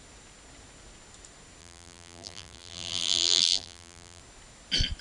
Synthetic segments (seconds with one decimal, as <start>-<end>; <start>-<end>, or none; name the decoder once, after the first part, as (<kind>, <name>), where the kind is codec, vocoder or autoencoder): 1.6-4.2 (vocoder, BigVGAN v2)